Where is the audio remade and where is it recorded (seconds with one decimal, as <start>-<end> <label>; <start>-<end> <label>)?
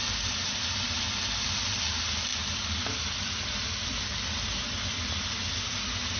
0.0-1.0 remade; 1.0-2.3 recorded; 2.3-5.1 remade; 5.1-6.2 recorded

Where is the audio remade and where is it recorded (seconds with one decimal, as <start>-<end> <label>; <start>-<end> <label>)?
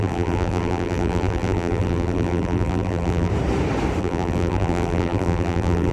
0.0-3.3 remade; 3.3-4.0 recorded; 4.0-5.9 remade